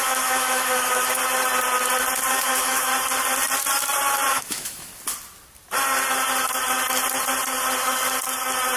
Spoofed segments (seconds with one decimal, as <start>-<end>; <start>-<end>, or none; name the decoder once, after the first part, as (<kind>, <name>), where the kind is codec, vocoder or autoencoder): 0.0-1.2 (autoencoder, DAC-VAE); 2.3-2.9; 4.3-4.9